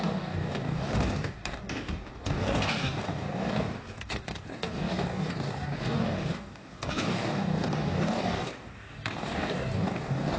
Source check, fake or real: fake